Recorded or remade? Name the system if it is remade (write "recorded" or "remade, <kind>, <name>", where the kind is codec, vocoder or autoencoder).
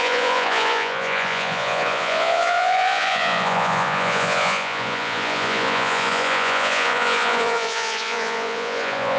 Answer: remade, vocoder, Vocos